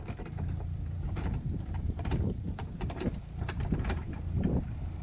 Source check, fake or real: fake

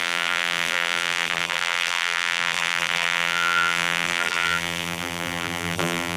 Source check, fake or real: fake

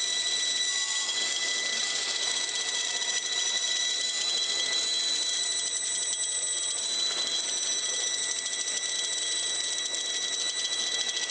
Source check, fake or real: real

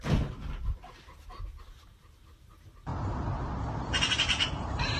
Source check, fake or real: fake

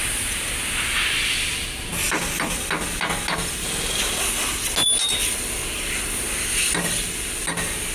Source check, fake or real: real